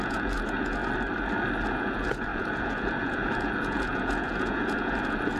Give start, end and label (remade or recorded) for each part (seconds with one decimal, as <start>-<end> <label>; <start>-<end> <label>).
0.0-0.8 remade; 0.8-1.7 recorded; 1.7-5.4 remade